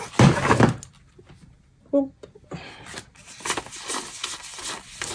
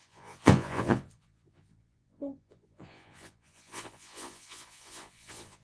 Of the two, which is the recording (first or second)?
first